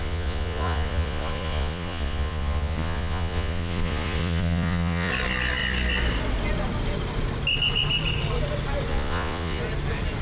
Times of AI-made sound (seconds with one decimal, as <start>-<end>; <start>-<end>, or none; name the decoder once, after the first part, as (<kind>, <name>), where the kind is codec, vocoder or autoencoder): 0.0-5.1 (vocoder, Vocos); 8.9-9.6